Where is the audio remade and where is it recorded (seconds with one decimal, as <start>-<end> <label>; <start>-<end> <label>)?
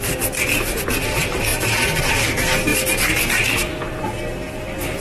0.0-5.0 recorded